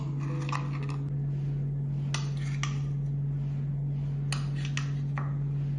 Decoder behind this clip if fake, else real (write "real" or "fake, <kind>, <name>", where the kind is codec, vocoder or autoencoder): real